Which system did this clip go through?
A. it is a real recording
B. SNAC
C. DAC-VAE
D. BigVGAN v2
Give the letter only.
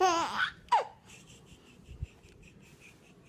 A